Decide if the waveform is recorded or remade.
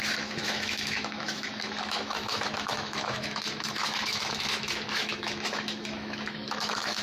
remade